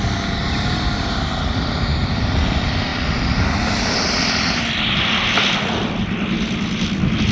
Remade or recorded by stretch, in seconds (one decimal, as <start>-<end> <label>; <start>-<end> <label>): 0.0-2.9 recorded; 2.9-3.7 remade; 3.7-7.3 recorded